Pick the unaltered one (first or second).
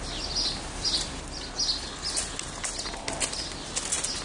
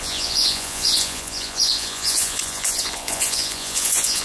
first